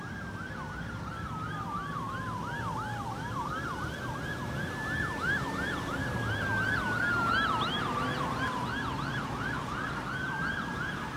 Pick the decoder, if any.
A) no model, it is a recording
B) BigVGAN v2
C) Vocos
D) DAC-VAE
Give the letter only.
A